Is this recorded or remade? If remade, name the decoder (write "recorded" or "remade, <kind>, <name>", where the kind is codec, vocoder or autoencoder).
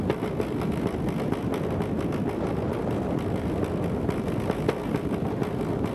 recorded